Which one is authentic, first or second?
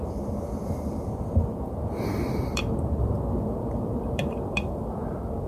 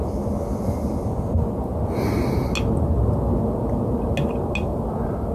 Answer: second